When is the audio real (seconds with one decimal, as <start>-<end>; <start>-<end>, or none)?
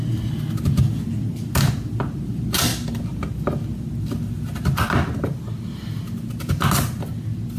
0.0-7.6